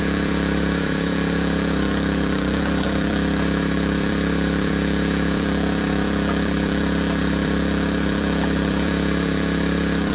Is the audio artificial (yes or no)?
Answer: yes